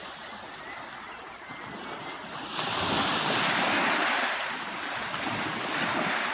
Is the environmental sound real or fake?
real